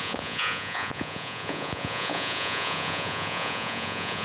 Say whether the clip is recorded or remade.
remade